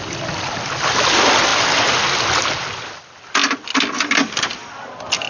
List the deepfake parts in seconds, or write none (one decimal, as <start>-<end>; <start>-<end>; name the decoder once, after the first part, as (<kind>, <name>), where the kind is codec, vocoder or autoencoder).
none